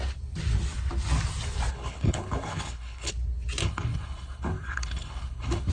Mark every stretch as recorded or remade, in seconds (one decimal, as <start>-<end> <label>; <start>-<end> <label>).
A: 0.0-1.7 recorded; 1.7-3.1 remade; 3.1-3.6 recorded; 3.6-5.7 remade